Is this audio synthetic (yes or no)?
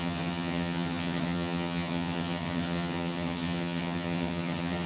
yes